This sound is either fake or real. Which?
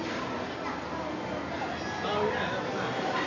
real